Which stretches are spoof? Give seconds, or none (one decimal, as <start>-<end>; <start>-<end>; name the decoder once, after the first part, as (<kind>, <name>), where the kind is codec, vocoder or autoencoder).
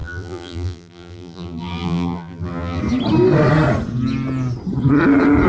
0.0-2.8 (vocoder, BigVGAN v2)